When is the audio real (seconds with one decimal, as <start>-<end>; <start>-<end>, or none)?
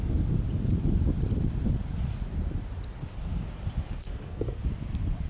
0.0-4.0; 4.6-5.3